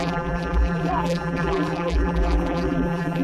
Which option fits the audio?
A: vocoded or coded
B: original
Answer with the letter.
A